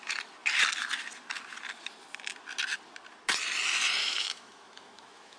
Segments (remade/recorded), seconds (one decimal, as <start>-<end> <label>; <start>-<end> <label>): 0.0-4.0 recorded; 4.0-5.4 remade